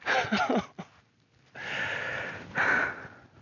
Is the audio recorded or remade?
recorded